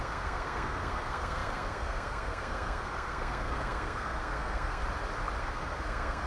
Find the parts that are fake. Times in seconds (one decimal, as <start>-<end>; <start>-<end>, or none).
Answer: 0.0-4.8; 5.4-6.3